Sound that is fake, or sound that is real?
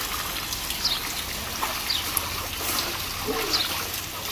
real